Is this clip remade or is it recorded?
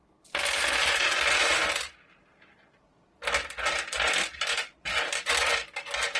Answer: recorded